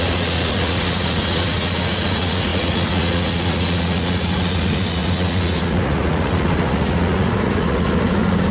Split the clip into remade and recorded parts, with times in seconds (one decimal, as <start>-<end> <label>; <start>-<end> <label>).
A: 0.0-8.5 remade